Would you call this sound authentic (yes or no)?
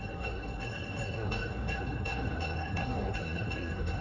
no